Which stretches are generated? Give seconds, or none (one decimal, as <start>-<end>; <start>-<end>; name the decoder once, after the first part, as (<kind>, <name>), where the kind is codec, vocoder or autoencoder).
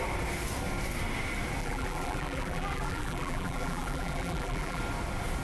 1.6-4.8 (vocoder, BigVGAN v2)